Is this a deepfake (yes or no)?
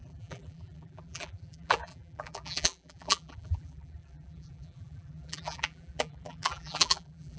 yes